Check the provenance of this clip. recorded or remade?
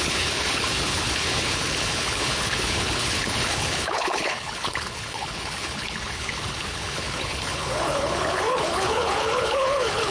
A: remade